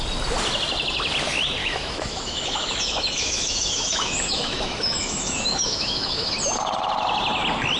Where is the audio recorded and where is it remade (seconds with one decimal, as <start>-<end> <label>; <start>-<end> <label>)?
0.0-1.6 recorded; 1.6-6.3 remade; 6.3-7.8 recorded